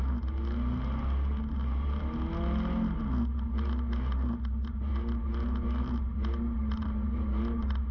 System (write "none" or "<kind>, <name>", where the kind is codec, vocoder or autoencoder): none